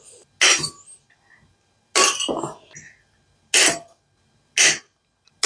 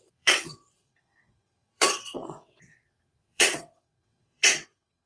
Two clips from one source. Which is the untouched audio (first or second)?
first